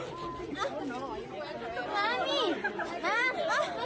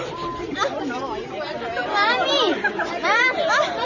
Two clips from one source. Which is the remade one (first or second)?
second